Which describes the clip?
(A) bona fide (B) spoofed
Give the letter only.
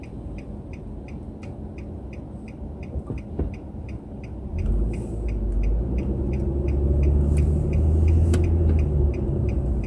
A